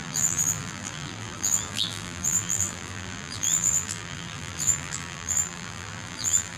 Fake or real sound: fake